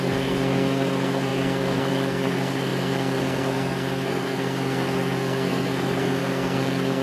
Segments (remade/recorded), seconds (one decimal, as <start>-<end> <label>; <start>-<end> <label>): 0.0-7.0 remade